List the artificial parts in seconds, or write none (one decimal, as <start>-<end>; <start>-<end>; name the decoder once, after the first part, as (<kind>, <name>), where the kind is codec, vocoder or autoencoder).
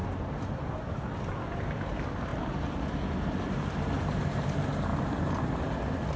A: none